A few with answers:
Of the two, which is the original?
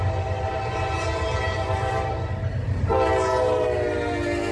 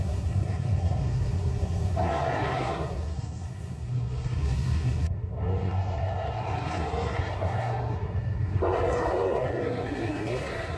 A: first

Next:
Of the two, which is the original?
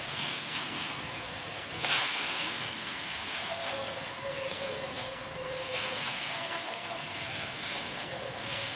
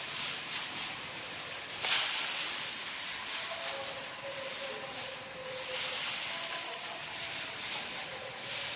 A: second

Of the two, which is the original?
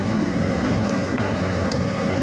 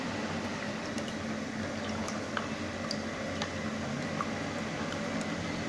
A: second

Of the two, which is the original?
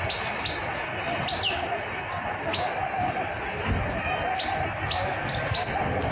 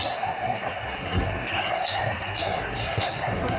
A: first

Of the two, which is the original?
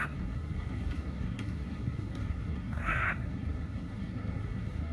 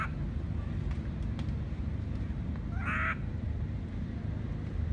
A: second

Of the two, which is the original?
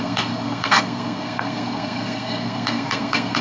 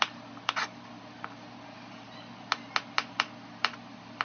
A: second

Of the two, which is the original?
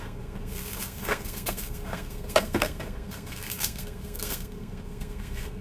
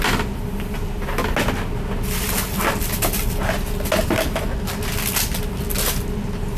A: second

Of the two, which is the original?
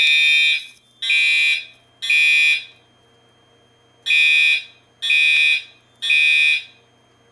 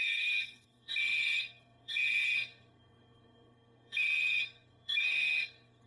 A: first